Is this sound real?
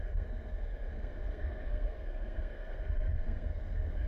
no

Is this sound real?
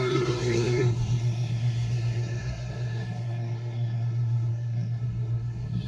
no